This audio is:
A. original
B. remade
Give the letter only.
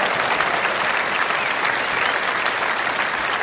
A